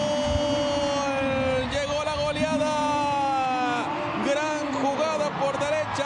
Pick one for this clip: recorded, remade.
recorded